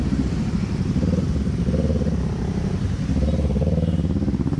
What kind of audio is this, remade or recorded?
remade